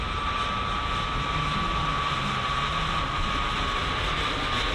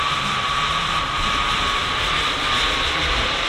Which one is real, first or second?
first